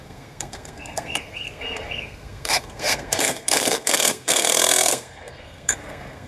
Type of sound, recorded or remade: remade